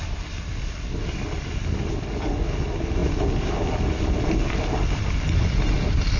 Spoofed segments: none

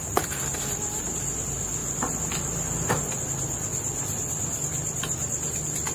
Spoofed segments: none